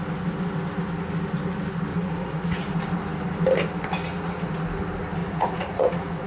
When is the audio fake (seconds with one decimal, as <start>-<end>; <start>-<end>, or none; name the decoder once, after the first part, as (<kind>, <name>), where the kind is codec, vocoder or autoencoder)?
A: 1.9-2.6 (vocoder, Vocos); 4.0-4.5; 5.2-6.3